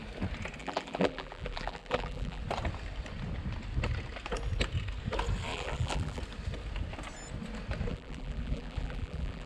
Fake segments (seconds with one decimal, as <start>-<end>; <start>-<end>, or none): 0.6-2.4; 5.5-6.2; 7.9-9.5